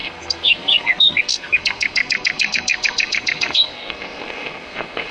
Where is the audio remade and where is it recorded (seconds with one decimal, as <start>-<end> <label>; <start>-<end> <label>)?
0.0-5.1 remade